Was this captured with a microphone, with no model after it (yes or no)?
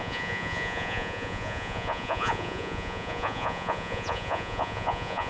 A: no